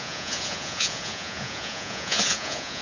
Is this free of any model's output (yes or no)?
no